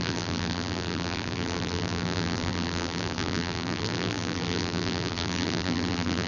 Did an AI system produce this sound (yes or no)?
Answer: yes